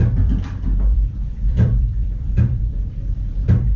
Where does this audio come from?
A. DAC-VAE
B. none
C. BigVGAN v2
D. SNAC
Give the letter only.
C